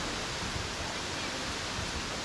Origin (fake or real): real